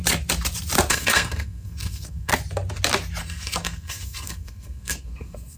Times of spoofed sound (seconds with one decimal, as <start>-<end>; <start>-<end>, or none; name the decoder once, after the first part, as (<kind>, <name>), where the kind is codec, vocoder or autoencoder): 0.9-2.3 (codec, SNAC); 3.2-5.6